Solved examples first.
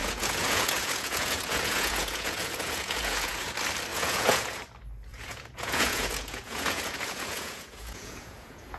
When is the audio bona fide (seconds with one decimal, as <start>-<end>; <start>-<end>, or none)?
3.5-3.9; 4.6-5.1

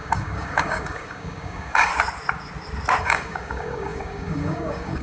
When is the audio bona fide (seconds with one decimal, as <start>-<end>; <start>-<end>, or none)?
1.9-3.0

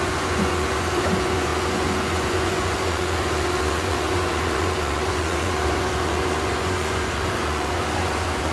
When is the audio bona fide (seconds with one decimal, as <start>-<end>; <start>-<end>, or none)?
none

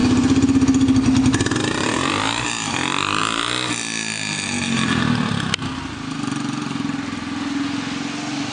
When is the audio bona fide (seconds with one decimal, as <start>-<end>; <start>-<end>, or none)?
0.0-8.5

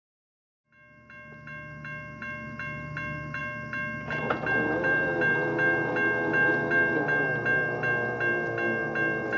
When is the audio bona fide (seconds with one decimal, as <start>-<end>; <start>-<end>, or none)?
0.0-9.4